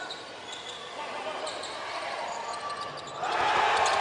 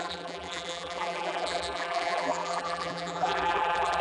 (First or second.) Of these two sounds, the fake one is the second